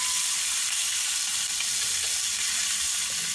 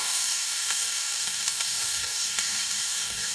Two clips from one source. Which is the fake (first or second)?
second